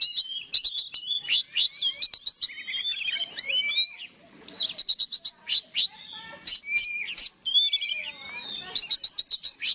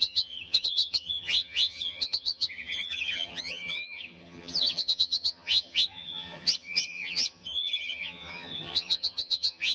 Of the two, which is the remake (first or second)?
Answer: second